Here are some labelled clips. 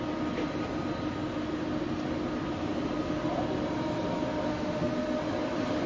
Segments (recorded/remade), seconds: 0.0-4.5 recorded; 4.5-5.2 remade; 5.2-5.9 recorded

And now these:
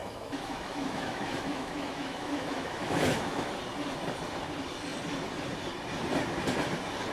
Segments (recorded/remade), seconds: 0.0-3.5 remade; 3.5-7.1 recorded